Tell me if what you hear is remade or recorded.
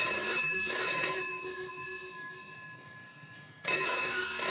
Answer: remade